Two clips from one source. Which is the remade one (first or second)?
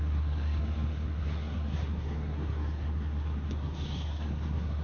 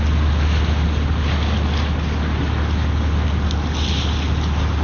first